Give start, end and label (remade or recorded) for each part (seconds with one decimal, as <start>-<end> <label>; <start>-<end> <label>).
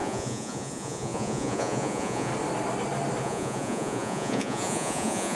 0.0-2.3 remade; 2.3-3.2 recorded; 3.2-5.4 remade